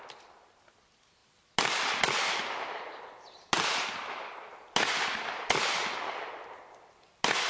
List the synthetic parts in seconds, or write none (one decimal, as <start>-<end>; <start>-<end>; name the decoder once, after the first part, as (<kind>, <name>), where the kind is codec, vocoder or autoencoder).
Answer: none